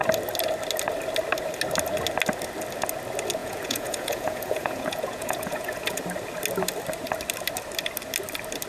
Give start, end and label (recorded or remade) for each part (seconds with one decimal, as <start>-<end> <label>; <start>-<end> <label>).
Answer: 0.0-3.4 recorded; 3.4-6.0 remade; 6.0-8.7 recorded